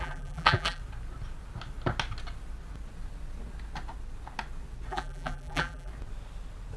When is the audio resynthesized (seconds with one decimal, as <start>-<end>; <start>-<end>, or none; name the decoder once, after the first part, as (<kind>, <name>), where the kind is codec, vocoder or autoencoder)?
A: 0.0-0.8 (vocoder, BigVGAN v2); 4.9-5.9